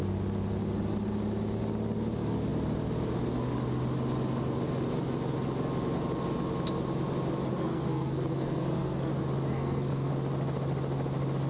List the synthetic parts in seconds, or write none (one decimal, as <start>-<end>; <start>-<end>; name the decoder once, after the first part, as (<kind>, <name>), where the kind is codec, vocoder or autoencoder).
7.5-9.1 (codec, SNAC); 9.5-10.1